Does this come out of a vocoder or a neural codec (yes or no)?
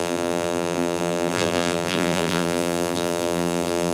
yes